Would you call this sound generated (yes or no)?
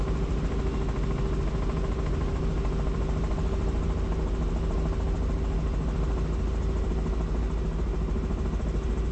no